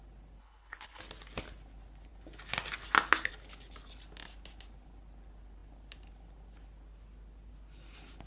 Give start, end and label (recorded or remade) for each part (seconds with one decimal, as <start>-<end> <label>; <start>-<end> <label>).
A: 0.0-0.4 recorded; 0.4-1.0 remade; 1.0-8.3 recorded